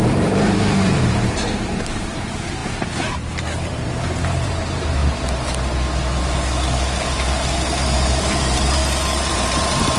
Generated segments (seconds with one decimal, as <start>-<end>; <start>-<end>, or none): 0.0-5.0; 8.2-8.8; 9.3-10.0